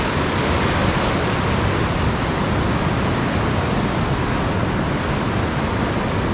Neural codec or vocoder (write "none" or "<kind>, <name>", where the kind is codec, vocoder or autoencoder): none